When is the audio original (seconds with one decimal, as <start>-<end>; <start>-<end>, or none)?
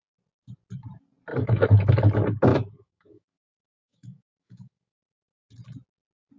0.0-1.3; 1.9-2.5; 5.5-6.4